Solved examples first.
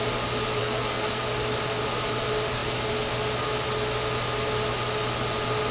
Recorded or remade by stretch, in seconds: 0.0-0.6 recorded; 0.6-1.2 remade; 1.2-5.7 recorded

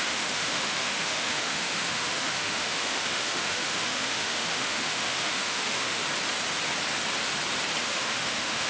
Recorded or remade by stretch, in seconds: 0.0-6.0 remade; 6.0-7.8 recorded; 7.8-8.7 remade

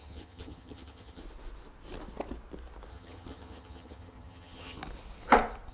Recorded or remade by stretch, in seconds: 0.0-1.2 remade; 1.2-2.9 recorded; 2.9-4.8 remade; 4.8-5.7 recorded

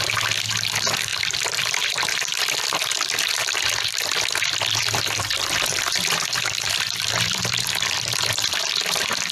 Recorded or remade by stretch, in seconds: 0.0-1.1 recorded; 1.1-2.4 remade; 2.4-3.4 recorded; 3.4-8.6 remade; 8.6-9.3 recorded

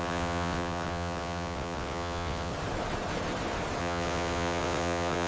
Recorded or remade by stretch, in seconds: 0.0-2.5 remade; 2.5-3.8 recorded; 3.8-5.3 remade

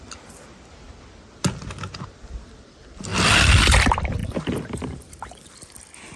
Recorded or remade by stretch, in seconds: 0.0-4.2 recorded; 4.2-5.5 remade; 5.5-6.2 recorded

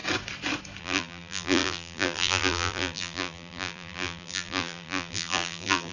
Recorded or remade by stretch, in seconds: 0.0-0.8 recorded; 0.8-5.9 remade